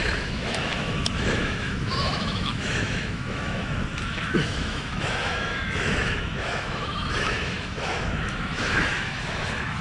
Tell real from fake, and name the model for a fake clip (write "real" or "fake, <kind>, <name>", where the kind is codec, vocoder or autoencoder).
fake, autoencoder, DAC-VAE